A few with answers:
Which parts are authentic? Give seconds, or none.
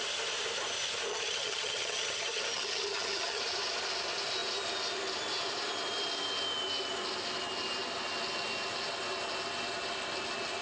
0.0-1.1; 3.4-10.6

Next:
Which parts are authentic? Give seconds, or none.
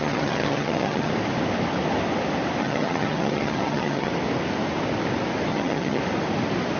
1.1-2.6; 4.1-5.5; 6.0-6.8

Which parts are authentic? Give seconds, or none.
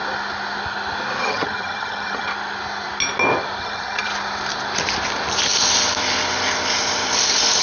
0.0-1.2; 2.3-3.6; 4.1-7.6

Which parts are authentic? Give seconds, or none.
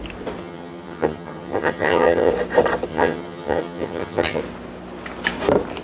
0.0-0.4; 2.3-2.9; 4.4-5.8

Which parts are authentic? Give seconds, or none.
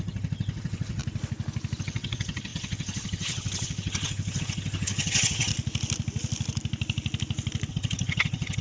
1.0-1.8; 5.5-7.7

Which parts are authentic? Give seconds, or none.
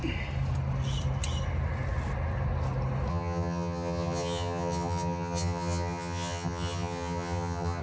0.0-3.1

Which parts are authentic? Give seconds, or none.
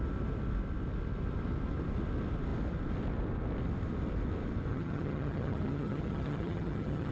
0.0-4.7